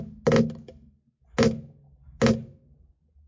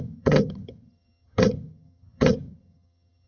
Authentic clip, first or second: first